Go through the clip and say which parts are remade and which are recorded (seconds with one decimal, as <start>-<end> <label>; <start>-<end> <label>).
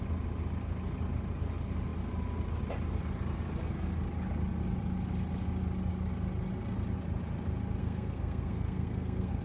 0.0-7.8 recorded; 7.8-9.4 remade